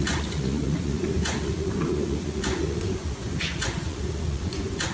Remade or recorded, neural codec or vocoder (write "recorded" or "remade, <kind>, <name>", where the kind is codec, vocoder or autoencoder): remade, vocoder, Vocos